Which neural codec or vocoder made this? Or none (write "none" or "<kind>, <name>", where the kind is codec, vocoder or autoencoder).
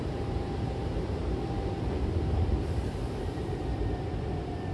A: vocoder, BigVGAN v2